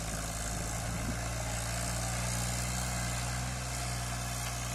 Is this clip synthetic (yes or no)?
no